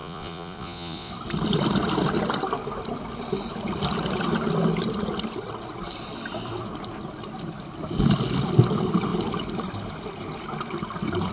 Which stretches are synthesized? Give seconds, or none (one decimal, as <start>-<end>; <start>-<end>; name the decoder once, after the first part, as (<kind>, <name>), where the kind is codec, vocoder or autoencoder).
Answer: 0.0-1.1 (vocoder, Vocos)